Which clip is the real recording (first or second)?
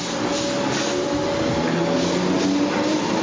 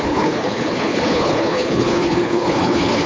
first